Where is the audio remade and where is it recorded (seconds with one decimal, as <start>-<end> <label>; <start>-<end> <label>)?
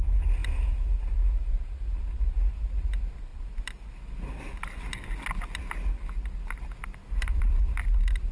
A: 0.0-3.3 recorded; 3.3-3.9 remade; 3.9-7.0 recorded; 7.0-7.5 remade; 7.5-8.3 recorded